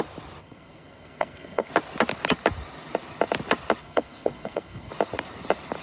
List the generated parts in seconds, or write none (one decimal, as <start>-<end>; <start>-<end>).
0.4-1.7; 3.8-4.9